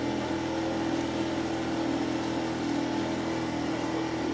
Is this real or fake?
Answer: real